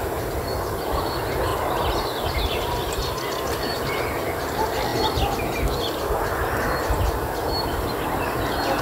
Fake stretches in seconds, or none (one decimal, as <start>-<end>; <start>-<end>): 1.5-2.9; 3.7-4.4

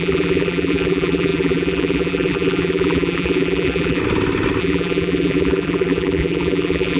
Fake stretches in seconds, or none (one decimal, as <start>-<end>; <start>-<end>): 0.0-4.0; 4.6-7.0